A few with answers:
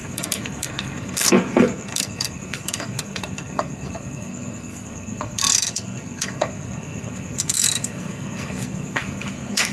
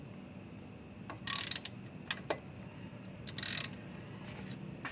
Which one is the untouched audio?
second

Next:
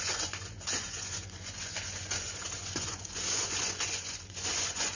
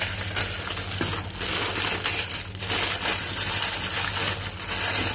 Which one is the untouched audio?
second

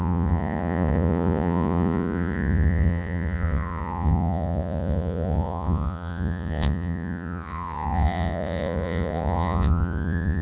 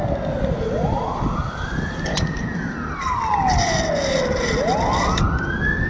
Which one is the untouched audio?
second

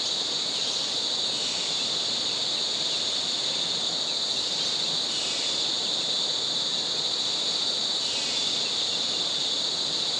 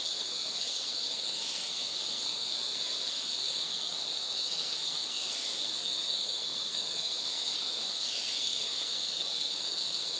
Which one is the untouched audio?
first